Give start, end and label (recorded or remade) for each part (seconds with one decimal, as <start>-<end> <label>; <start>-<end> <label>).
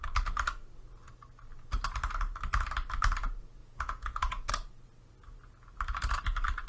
0.0-3.6 recorded; 3.6-4.5 remade; 4.5-6.7 recorded